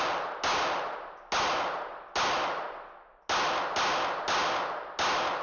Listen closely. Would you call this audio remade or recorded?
recorded